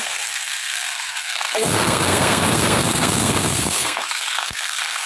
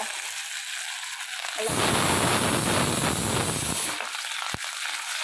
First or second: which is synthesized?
first